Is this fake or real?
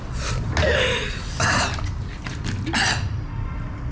real